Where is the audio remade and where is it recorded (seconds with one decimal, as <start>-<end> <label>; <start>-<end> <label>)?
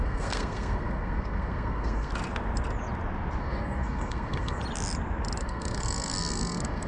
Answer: 0.0-2.1 remade; 2.1-3.4 recorded; 3.4-4.6 remade; 4.6-5.4 recorded; 5.4-6.9 remade